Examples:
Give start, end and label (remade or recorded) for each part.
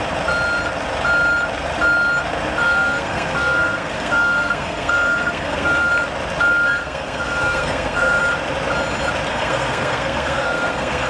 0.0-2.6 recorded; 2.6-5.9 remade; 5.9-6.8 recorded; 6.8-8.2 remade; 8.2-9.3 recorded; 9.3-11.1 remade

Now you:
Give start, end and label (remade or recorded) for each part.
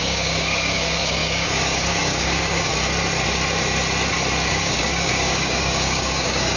0.0-2.7 remade; 2.7-4.5 recorded; 4.5-6.6 remade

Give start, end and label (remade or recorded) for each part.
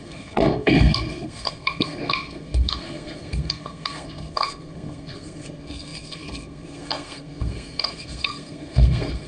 0.0-9.3 remade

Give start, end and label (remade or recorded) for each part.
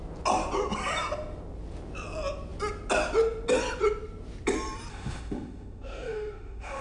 0.0-4.9 recorded; 4.9-6.8 remade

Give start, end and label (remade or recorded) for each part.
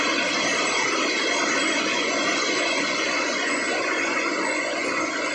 0.0-1.9 recorded; 1.9-5.3 remade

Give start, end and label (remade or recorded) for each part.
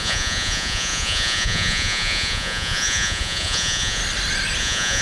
0.0-4.0 remade; 4.0-4.6 recorded; 4.6-5.0 remade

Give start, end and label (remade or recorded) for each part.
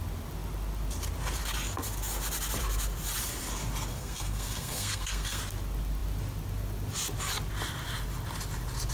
0.0-3.9 recorded; 3.9-5.4 remade; 5.4-8.9 recorded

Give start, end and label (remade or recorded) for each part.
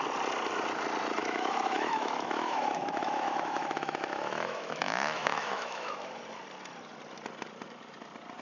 0.0-1.2 recorded; 1.2-6.2 remade; 6.2-8.4 recorded